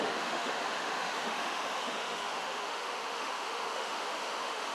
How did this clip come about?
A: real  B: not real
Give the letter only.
B